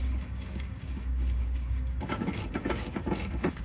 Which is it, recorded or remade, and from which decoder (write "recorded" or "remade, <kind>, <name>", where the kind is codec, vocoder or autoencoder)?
remade, codec, DAC